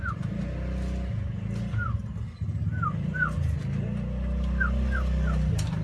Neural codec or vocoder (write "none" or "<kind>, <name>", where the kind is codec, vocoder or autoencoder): none